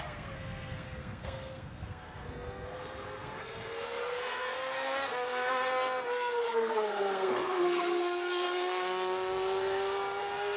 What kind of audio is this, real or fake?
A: fake